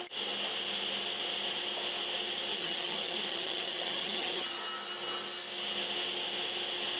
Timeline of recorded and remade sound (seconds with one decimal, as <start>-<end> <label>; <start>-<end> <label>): 0.0-2.5 recorded; 2.5-4.6 remade; 4.6-7.0 recorded